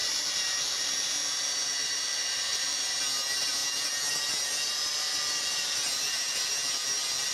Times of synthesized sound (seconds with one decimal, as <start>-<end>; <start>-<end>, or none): 0.0-3.0